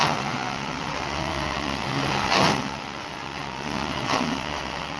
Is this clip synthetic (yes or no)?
yes